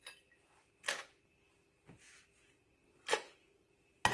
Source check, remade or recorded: recorded